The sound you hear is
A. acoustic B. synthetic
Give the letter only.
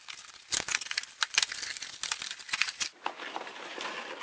A